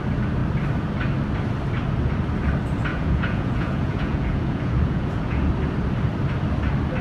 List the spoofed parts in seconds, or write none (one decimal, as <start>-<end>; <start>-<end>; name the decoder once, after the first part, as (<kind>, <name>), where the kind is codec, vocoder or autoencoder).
2.9-5.5 (vocoder, Vocos)